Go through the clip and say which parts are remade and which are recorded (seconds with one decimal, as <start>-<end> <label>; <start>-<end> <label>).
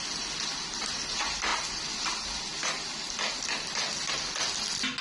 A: 0.0-5.0 recorded